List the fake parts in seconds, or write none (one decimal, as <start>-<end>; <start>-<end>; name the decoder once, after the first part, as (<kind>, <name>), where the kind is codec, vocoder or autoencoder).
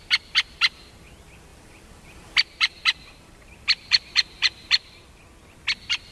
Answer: 1.5-5.2 (vocoder, BigVGAN v2)